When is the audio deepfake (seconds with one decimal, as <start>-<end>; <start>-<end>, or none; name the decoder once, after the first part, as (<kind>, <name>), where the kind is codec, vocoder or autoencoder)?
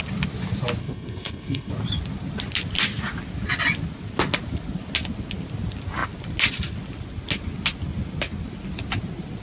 0.8-1.7 (codec, SNAC)